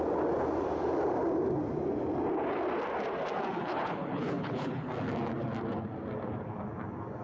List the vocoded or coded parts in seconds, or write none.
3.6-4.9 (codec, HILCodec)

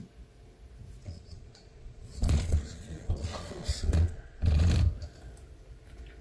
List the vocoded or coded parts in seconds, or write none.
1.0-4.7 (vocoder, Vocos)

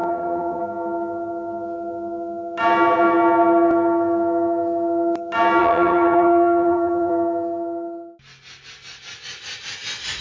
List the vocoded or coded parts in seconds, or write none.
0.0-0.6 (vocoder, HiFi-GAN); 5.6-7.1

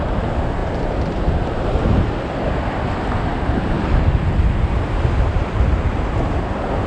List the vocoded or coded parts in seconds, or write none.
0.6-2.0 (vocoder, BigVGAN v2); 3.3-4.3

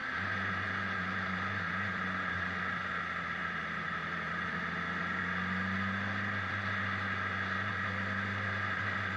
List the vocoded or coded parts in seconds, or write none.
0.0-3.0 (vocoder, BigVGAN v2); 3.4-5.2